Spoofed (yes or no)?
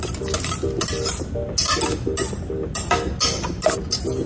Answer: no